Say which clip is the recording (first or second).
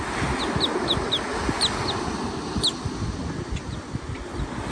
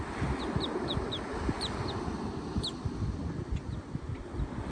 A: first